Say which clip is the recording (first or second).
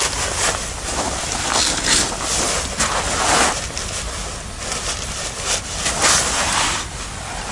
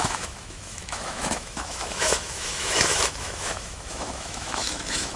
first